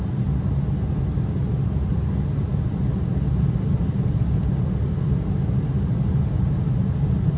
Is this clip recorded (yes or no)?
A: yes